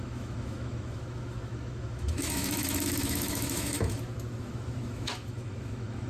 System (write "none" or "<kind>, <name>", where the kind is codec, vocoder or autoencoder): autoencoder, DAC-VAE